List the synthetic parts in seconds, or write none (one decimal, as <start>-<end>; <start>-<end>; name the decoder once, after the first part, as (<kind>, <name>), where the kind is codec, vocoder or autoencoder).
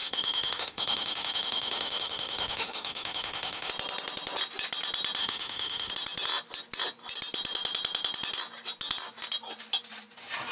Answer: 0.0-3.7 (autoencoder, DAC-VAE); 5.2-5.9